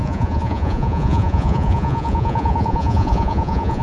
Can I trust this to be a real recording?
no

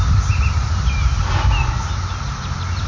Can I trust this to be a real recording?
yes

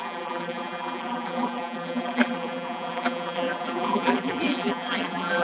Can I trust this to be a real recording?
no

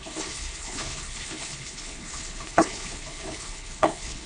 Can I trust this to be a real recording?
no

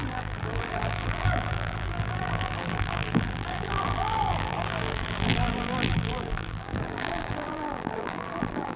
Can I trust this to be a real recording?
no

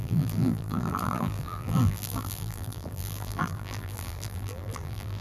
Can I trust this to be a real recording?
no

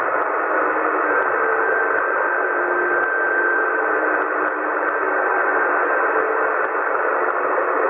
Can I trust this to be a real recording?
yes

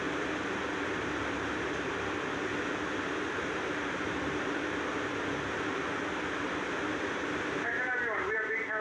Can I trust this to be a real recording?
yes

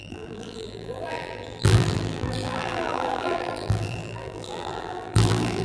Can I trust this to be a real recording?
no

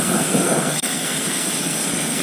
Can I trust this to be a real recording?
no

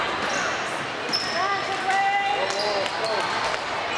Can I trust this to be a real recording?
yes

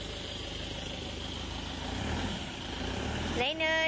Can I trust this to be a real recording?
yes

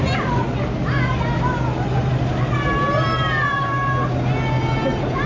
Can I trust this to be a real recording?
yes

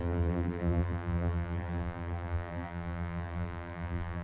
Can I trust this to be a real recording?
no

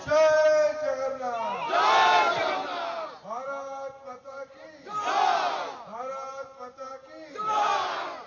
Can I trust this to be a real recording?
yes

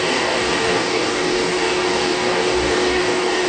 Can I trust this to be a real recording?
no